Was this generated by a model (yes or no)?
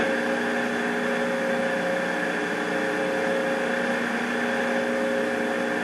no